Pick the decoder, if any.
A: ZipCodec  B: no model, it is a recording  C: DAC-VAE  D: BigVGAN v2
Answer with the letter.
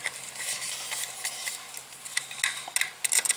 B